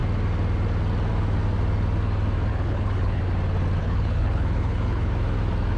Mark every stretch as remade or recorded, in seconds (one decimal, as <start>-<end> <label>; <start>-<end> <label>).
0.0-2.5 recorded; 2.5-3.2 remade; 3.2-3.8 recorded; 3.8-5.1 remade; 5.1-5.8 recorded